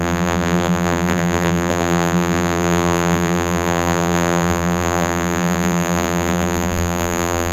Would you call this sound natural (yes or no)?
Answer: no